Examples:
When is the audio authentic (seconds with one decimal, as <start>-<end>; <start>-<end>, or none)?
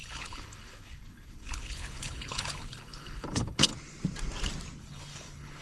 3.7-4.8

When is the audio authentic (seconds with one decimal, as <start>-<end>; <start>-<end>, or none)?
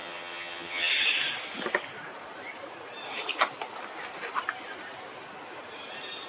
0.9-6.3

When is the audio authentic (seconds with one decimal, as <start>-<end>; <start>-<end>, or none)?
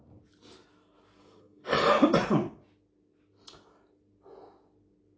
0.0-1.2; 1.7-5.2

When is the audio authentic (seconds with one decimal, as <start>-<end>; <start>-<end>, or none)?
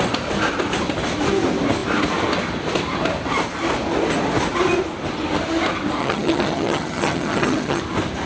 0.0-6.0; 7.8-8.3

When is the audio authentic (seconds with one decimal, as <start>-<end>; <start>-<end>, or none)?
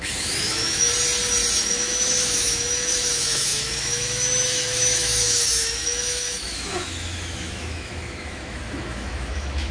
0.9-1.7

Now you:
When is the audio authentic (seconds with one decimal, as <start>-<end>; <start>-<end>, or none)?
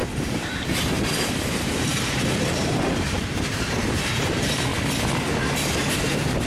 4.7-5.9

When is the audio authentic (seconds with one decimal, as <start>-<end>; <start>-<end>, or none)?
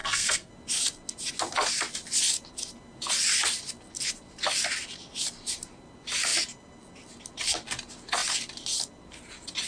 0.5-9.7